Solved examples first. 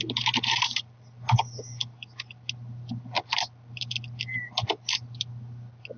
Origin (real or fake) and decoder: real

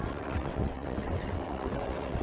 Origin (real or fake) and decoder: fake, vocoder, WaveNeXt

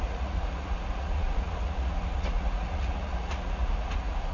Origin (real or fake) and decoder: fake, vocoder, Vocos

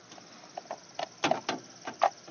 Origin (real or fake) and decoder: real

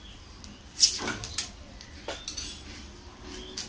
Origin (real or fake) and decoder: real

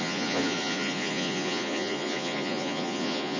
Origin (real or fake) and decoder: fake, vocoder, Vocos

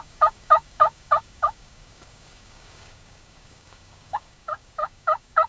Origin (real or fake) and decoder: fake, codec, DAC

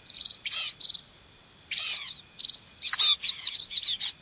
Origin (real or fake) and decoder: real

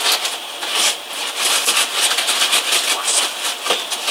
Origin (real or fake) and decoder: real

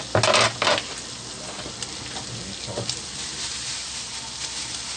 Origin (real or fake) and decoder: real